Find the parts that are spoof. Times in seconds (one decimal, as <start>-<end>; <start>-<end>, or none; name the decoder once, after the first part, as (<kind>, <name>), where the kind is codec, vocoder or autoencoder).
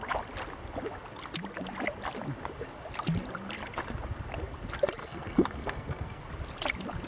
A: 5.0-6.2 (codec, SNAC)